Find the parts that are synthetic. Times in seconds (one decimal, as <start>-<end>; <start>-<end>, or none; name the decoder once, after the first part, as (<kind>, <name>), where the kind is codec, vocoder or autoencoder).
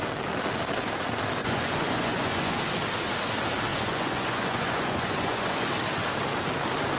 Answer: 1.4-2.5 (vocoder, Vocos); 3.7-5.7